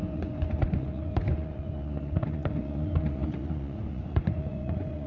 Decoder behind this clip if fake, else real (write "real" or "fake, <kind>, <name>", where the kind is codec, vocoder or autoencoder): fake, vocoder, Vocos